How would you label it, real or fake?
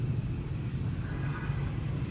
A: real